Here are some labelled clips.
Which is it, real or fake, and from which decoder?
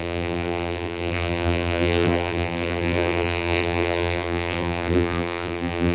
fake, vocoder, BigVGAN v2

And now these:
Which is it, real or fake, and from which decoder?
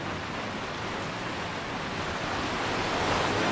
real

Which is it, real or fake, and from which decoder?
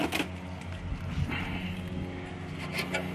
real